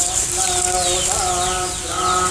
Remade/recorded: recorded